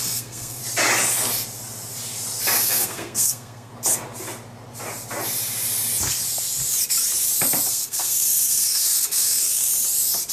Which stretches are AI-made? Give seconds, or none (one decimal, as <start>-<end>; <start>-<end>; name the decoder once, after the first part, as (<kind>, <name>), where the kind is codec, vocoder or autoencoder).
0.0-0.6 (codec, SNAC); 2.6-3.7; 7.7-9.7